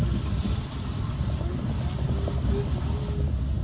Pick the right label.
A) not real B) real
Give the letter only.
B